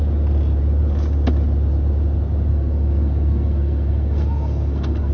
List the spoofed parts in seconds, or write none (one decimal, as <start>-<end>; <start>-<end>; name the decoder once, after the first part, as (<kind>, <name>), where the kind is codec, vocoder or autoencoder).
2.5-5.1 (codec, SNAC)